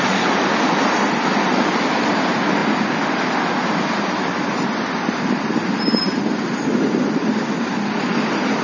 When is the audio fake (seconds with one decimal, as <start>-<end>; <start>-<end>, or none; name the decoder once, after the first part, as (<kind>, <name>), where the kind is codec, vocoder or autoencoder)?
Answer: 0.0-1.5 (vocoder, BigVGAN v2); 2.1-2.6; 7.1-8.6